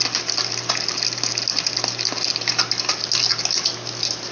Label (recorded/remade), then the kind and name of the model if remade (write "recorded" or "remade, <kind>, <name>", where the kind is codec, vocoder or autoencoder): recorded